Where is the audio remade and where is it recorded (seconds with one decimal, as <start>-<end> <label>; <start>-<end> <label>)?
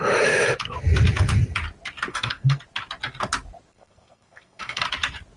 0.0-2.1 recorded; 2.1-2.6 remade; 2.6-3.7 recorded; 3.7-4.8 remade; 4.8-5.4 recorded